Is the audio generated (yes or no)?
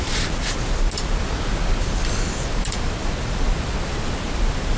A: yes